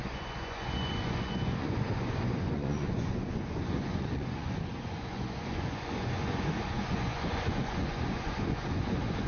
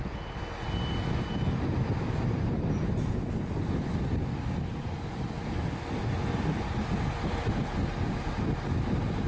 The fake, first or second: first